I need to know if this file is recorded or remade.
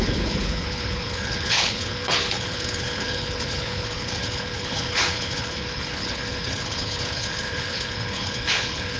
remade